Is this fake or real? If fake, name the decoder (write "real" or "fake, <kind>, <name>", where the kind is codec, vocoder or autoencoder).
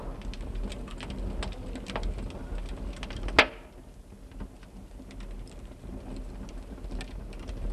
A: real